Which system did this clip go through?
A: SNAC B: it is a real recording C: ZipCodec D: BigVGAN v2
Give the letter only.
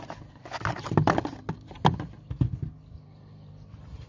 D